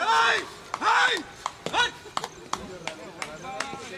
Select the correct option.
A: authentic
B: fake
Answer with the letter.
A